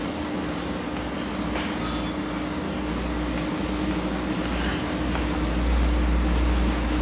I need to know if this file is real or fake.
real